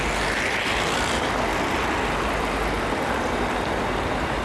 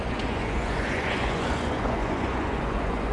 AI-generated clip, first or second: second